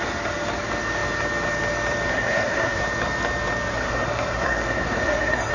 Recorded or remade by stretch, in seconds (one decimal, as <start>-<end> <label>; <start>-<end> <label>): 0.0-2.1 recorded; 2.1-2.8 remade; 2.8-3.7 recorded; 3.7-5.5 remade